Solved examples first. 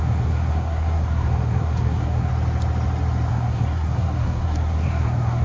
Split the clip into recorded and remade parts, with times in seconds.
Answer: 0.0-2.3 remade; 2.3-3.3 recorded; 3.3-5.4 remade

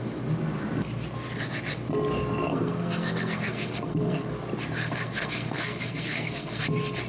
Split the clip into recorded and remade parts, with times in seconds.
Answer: 0.0-2.5 recorded; 2.5-4.3 remade; 4.3-4.8 recorded; 4.8-6.6 remade; 6.6-7.1 recorded

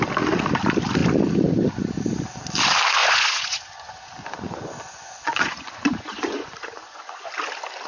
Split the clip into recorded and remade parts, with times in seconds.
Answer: 0.0-3.0 recorded; 3.0-7.3 remade; 7.3-7.9 recorded

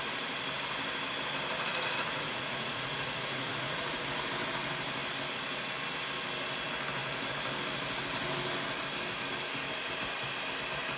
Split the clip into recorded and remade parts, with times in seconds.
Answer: 0.0-1.7 recorded; 1.7-4.0 remade; 4.0-11.0 recorded